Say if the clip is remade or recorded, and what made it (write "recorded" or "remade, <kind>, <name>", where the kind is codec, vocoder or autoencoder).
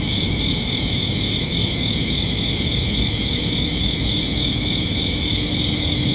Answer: remade, autoencoder, DAC-VAE